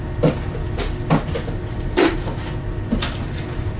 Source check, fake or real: real